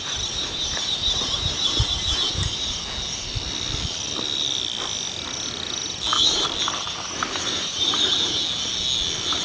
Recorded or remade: recorded